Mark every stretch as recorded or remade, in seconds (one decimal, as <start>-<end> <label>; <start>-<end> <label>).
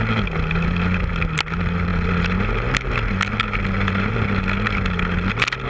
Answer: 0.0-5.7 recorded